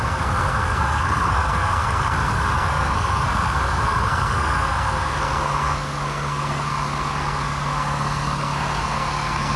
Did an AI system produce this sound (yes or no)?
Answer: yes